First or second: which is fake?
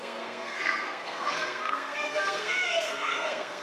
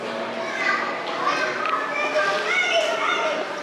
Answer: first